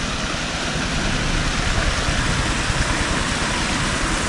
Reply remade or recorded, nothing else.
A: recorded